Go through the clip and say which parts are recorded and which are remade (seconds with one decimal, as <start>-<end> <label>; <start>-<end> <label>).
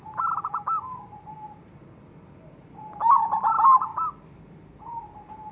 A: 0.0-5.5 recorded